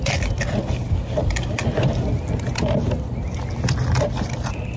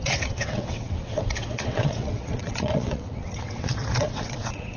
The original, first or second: first